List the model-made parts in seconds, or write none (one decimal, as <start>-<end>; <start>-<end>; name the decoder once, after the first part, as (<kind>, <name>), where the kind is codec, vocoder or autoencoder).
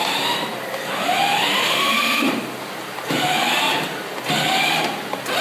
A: 1.6-2.3 (autoencoder, DAC-VAE)